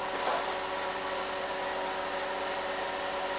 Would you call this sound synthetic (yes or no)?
no